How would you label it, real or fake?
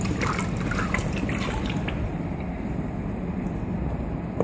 real